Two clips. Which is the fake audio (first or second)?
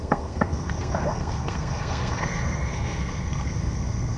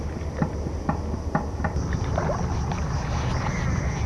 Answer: first